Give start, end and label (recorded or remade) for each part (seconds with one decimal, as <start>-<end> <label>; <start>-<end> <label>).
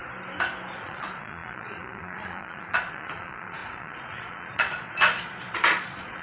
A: 0.0-0.7 recorded; 0.7-6.2 remade